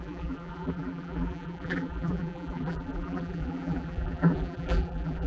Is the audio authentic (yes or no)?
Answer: no